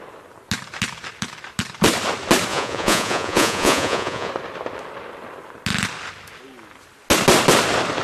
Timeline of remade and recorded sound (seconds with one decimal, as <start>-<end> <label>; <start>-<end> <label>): 0.0-2.5 recorded; 2.5-4.3 remade; 4.3-8.0 recorded